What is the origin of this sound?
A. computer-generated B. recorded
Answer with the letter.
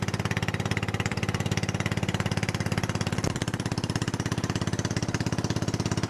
A